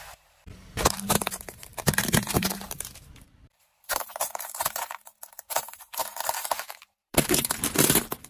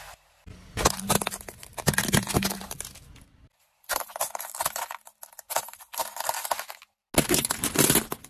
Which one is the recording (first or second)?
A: second